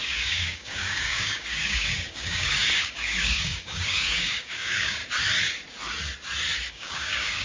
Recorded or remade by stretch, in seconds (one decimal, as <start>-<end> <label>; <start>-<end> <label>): 0.0-5.0 remade; 5.0-6.7 recorded; 6.7-7.4 remade